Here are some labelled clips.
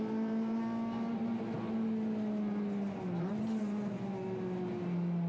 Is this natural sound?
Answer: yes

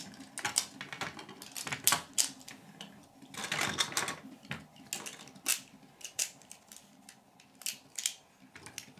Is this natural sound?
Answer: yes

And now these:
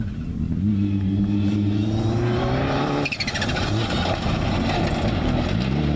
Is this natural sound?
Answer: yes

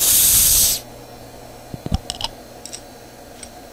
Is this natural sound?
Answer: yes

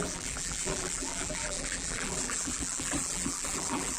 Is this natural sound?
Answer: no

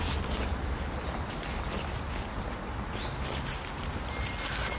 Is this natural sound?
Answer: yes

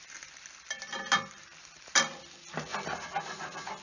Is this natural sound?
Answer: yes